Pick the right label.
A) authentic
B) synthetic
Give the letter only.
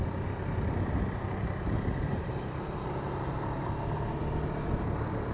B